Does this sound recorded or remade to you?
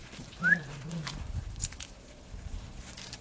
remade